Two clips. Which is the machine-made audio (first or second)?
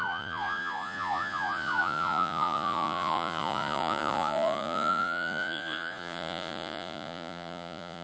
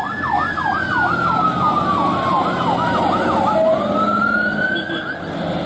first